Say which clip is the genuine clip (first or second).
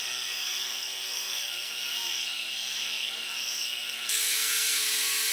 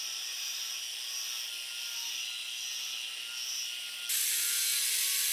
second